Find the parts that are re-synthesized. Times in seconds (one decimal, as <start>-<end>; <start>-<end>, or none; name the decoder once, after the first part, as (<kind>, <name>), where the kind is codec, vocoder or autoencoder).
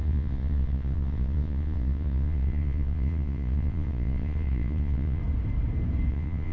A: 0.0-5.2 (vocoder, Vocos); 6.1-6.5